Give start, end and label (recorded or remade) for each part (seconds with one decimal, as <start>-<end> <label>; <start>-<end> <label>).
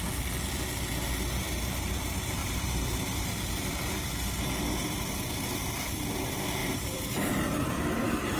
0.0-2.4 recorded; 2.4-4.1 remade; 4.1-6.6 recorded; 6.6-8.4 remade